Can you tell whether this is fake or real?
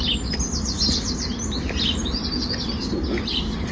real